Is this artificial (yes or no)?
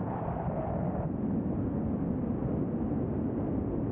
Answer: no